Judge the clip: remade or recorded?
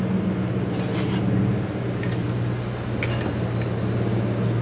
recorded